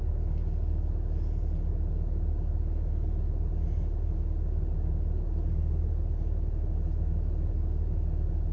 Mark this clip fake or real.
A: real